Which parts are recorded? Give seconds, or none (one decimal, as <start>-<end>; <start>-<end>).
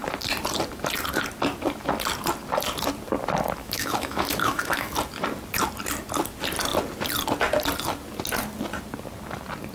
0.0-3.6; 4.9-9.7